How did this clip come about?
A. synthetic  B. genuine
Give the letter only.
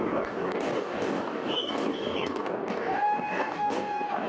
A